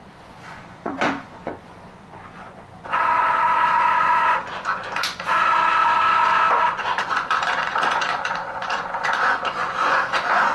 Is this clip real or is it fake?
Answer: fake